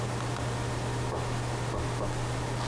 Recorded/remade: recorded